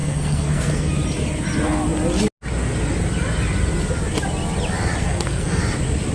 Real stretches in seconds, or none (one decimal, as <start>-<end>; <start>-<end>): 0.9-5.0; 5.6-6.1